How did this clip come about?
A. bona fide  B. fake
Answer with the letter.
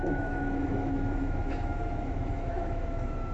B